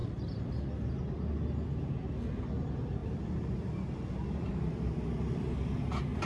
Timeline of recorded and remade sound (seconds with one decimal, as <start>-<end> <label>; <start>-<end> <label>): 0.0-6.3 recorded